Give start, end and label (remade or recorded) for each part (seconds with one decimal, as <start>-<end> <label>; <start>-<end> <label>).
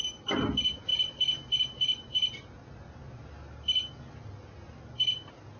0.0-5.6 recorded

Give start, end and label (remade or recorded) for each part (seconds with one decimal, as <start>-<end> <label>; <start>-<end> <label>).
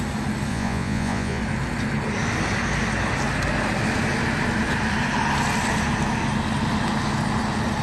0.0-0.5 recorded; 0.5-1.4 remade; 1.4-7.8 recorded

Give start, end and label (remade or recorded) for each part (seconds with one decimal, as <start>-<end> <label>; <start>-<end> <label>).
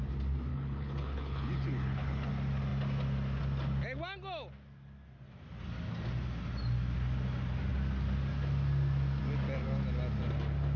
0.0-0.5 recorded; 0.5-2.3 remade; 2.3-10.8 recorded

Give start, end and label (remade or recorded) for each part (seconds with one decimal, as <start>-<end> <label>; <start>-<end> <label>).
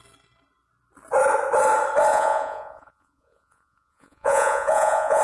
0.0-2.1 recorded; 2.1-5.2 remade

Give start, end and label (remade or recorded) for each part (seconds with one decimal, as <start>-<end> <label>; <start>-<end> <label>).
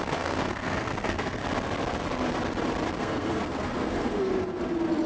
0.0-1.4 remade; 1.4-3.0 recorded; 3.0-4.3 remade; 4.3-5.1 recorded